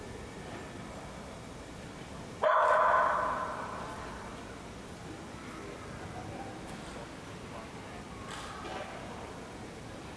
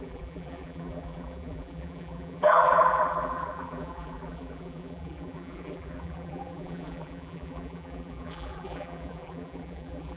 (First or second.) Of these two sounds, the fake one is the second